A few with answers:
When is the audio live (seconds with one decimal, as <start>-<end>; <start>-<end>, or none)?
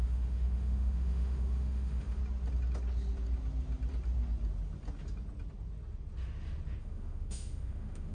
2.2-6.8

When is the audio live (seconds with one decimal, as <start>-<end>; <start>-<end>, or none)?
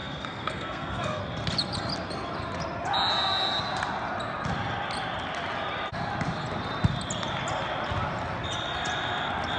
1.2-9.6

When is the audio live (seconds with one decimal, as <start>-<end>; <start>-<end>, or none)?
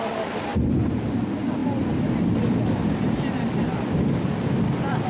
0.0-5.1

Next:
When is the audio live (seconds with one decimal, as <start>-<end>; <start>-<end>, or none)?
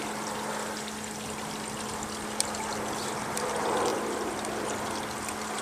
0.0-5.6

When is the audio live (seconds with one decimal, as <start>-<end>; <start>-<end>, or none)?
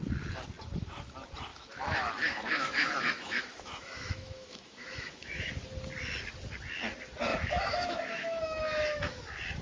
0.0-1.5; 5.5-7.3; 9.2-9.6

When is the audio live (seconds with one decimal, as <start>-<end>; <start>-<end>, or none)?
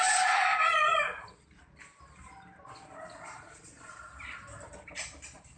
0.0-5.6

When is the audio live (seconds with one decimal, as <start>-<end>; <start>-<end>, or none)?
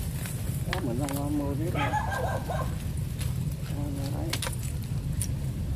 0.0-5.8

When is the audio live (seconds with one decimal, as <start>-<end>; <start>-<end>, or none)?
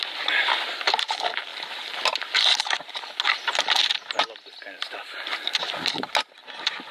0.0-6.9